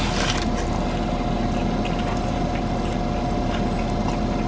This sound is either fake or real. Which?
real